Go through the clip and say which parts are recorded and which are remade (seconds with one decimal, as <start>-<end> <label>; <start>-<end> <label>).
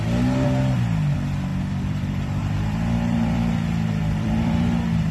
0.0-1.5 recorded; 1.5-4.6 remade; 4.6-5.1 recorded